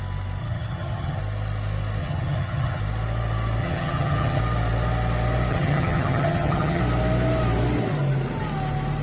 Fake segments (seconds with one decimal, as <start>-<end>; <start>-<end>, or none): 0.4-1.2; 2.0-2.8; 3.6-4.4; 5.5-6.8